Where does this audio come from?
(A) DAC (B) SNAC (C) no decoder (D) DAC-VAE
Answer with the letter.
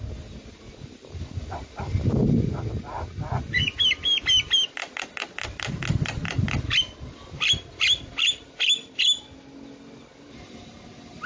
C